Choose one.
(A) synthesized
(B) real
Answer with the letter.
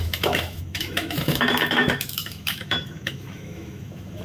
A